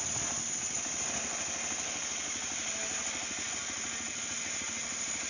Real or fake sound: real